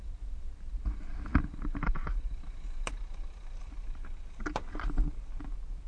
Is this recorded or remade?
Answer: recorded